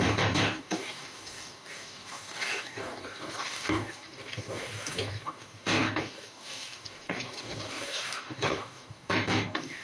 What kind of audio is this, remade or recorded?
remade